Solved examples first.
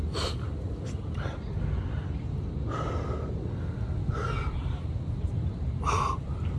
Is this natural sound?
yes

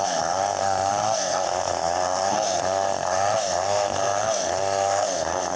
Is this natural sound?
no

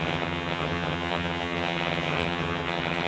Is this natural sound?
no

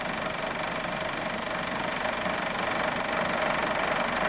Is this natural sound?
yes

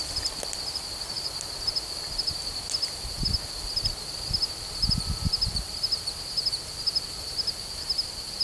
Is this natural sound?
yes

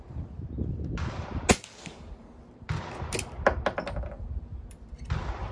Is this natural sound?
yes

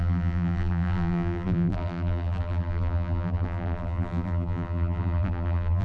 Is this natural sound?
no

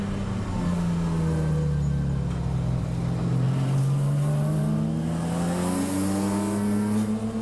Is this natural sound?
yes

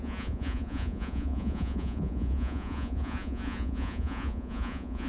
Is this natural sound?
no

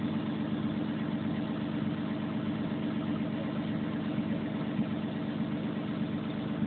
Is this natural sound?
yes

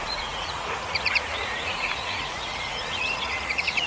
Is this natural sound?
no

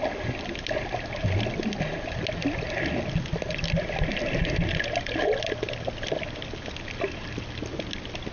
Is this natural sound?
yes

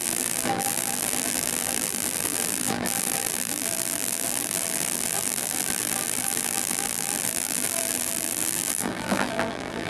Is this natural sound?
no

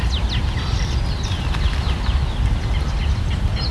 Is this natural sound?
yes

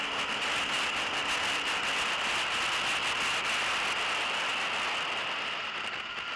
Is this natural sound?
yes